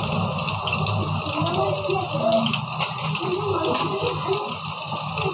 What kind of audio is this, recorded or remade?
recorded